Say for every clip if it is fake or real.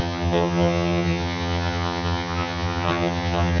fake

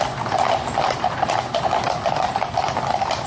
real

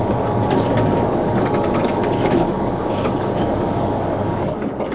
fake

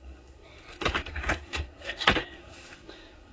fake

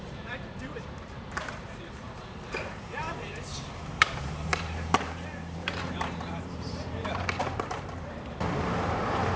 fake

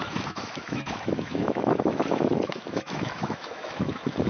fake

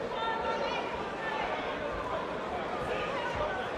real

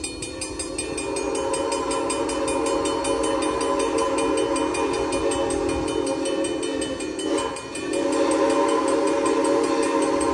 real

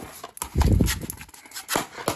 real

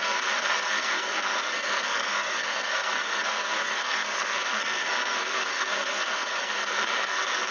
fake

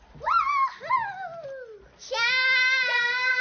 real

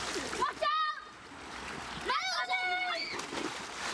real